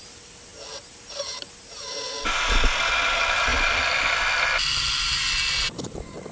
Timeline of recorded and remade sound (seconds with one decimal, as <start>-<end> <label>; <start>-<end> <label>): 0.0-6.3 recorded